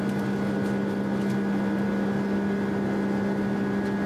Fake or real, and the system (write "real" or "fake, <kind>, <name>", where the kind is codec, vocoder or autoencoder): real